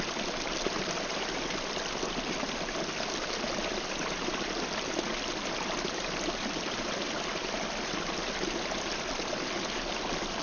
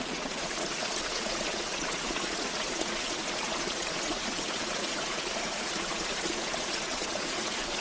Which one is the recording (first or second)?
first